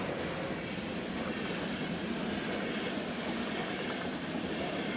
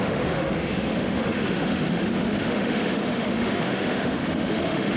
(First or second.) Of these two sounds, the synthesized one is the second